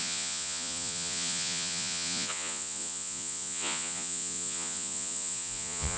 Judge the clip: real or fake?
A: fake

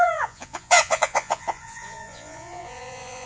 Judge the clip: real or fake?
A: fake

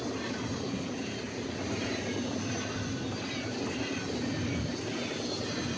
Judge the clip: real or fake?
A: real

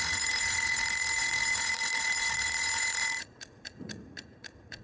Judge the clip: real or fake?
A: fake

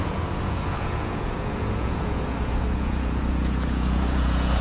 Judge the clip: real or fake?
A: fake